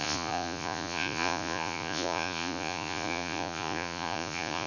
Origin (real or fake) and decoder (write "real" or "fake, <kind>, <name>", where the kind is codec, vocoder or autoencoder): fake, vocoder, Vocos